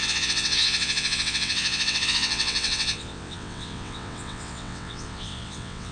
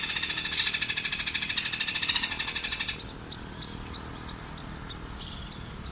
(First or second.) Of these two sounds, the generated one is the first